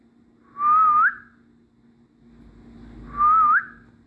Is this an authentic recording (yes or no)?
yes